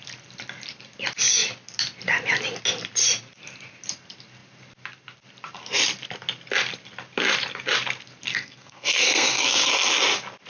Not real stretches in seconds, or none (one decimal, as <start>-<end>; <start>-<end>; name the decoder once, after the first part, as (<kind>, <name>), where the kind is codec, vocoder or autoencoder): 8.3-9.7 (codec, SNAC)